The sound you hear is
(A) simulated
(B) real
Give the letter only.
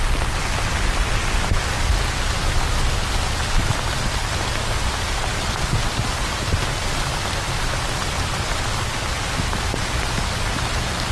B